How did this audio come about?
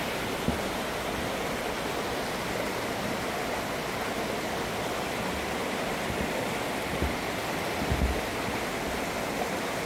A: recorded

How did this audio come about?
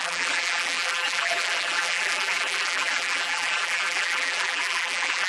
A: remade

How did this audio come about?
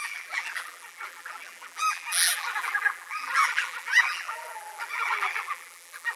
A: remade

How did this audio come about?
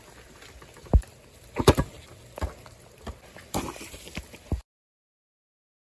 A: remade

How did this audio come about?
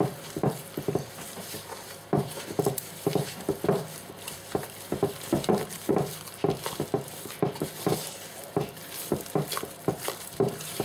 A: remade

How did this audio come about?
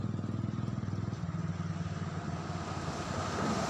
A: recorded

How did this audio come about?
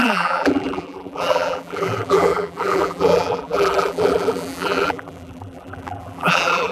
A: remade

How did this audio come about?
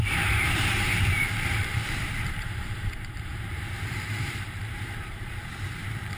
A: remade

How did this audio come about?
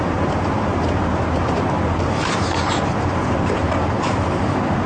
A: remade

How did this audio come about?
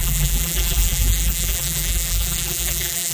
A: remade